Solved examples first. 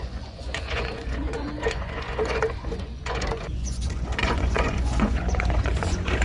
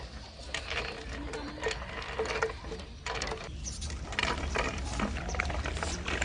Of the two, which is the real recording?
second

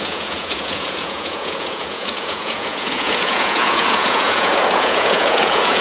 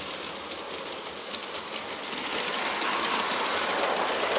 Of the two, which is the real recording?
second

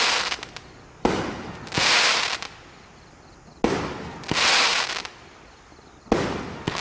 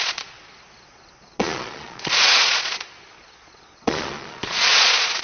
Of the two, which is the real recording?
first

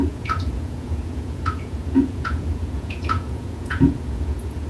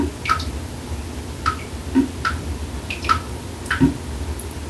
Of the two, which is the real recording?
second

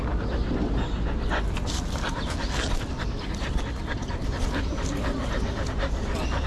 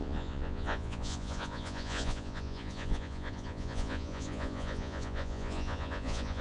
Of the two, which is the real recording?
first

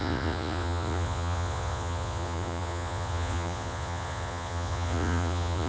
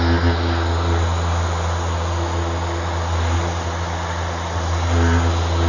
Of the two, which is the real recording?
second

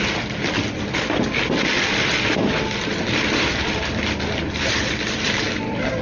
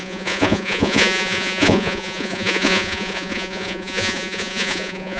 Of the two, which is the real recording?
first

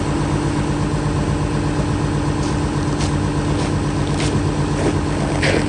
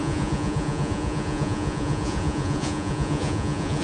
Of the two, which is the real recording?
first